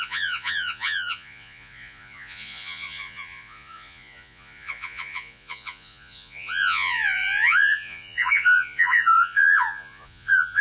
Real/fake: fake